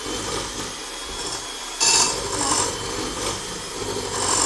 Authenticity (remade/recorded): remade